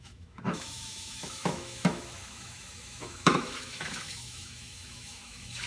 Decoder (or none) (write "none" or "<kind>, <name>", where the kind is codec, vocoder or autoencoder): autoencoder, DAC-VAE